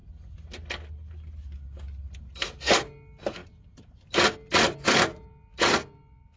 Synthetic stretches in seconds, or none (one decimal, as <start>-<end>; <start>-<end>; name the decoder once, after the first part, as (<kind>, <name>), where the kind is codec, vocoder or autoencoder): none